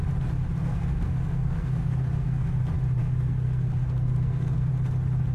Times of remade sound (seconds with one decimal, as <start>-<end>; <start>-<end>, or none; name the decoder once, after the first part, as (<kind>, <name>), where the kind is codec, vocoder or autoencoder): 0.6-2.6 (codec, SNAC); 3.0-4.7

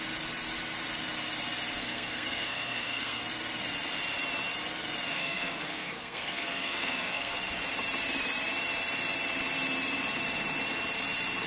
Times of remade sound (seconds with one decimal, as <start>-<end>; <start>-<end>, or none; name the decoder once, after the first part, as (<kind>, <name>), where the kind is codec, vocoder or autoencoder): 1.8-3.2 (codec, SNAC); 5.1-7.4

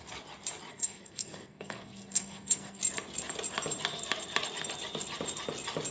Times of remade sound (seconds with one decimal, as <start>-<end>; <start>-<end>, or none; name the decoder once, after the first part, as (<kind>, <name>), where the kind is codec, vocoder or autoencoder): 0.7-2.8 (codec, SNAC)

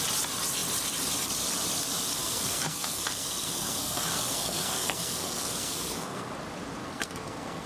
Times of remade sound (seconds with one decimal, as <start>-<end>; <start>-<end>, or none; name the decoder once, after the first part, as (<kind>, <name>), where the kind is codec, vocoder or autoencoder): 2.2-6.3 (codec, SNAC); 6.8-7.7